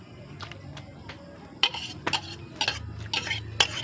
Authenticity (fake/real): real